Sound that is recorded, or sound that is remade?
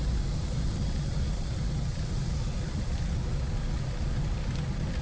recorded